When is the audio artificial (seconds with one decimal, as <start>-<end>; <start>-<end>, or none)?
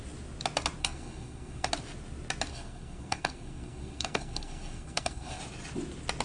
0.8-1.7; 2.5-5.4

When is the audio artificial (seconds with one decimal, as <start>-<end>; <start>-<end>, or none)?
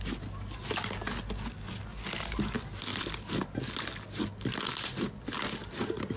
none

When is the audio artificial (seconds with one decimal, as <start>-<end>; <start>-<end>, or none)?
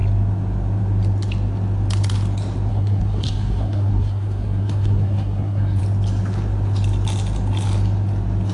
2.7-5.8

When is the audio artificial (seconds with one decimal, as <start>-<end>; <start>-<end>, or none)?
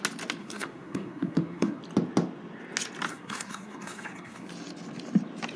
0.4-1.8; 3.1-4.5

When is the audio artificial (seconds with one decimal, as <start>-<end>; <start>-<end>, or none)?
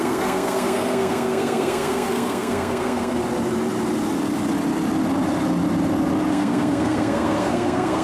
0.0-3.2; 6.3-8.0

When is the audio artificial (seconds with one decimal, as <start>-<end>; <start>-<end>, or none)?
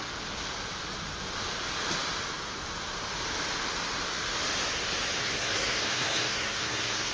5.2-7.1